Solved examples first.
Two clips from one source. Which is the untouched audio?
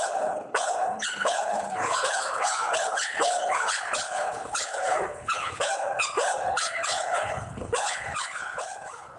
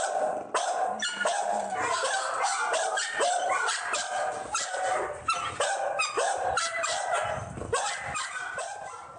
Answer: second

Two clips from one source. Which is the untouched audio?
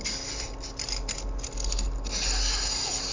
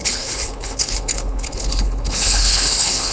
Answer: first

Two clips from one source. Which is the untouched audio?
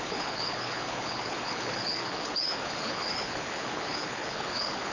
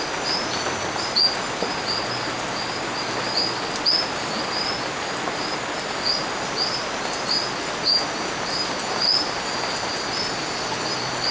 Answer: second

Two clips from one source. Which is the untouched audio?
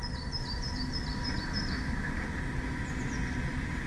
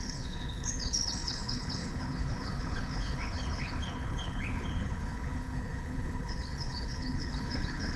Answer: first